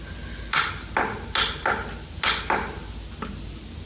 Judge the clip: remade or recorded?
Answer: recorded